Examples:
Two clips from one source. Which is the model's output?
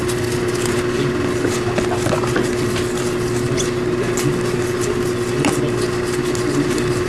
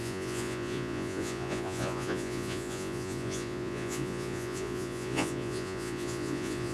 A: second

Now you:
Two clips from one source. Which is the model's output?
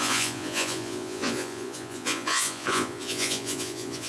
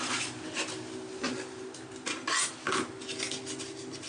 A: first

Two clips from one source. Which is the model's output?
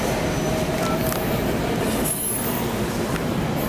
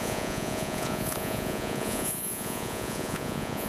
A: second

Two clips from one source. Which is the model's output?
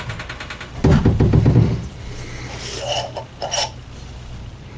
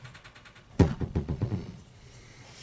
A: second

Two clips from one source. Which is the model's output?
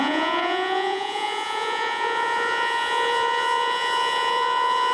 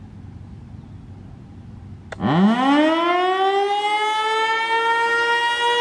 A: first